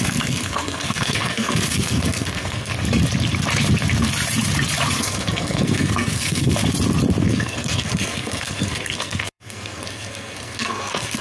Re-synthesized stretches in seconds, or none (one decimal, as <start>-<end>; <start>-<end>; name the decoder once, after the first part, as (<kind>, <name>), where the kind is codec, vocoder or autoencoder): 0.0-2.7 (codec, SNAC); 5.0-6.6; 7.2-11.2